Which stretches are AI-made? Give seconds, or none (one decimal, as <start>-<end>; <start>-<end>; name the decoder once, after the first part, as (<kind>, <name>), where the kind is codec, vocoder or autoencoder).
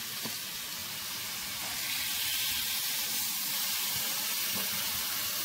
none